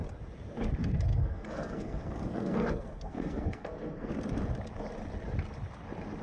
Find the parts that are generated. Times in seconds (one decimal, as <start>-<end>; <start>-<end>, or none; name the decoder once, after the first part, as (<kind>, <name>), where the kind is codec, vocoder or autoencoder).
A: 1.1-4.1 (codec, SNAC)